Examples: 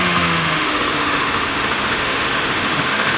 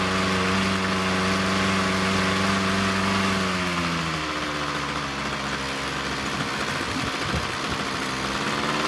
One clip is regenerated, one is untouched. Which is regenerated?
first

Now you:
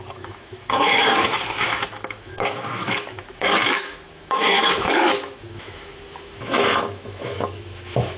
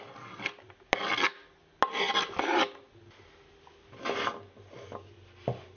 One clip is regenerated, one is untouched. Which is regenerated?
first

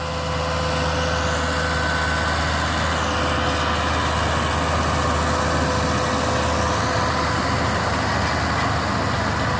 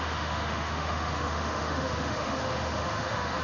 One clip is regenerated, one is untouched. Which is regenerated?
second